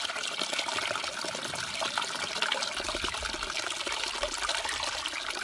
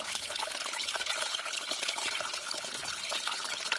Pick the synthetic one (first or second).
second